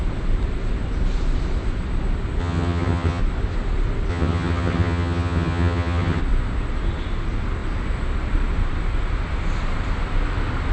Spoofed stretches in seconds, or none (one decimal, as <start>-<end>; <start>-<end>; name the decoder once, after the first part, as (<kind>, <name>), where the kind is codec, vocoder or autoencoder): 2.4-3.2 (vocoder, HiFi-GAN); 4.1-6.2